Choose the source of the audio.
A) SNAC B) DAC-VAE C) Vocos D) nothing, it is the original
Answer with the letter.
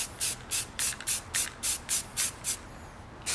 D